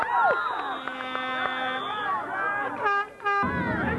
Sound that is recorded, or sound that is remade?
recorded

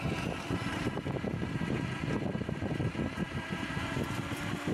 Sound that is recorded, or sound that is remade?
remade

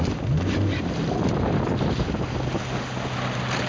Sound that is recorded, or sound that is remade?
recorded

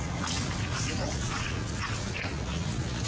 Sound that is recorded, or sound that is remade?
remade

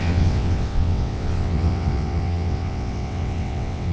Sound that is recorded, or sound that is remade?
remade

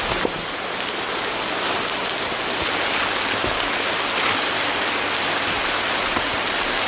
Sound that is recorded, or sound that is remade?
recorded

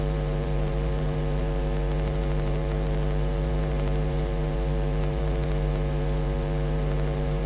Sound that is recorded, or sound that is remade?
remade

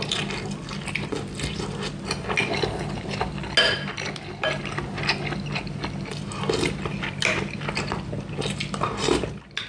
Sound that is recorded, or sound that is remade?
recorded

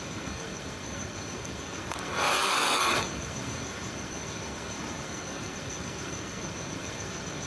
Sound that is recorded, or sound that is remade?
remade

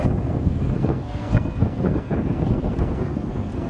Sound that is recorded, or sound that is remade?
remade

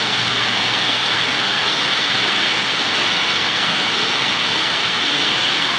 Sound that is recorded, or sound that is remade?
remade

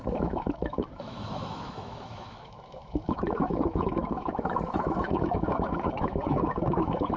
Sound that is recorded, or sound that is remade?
remade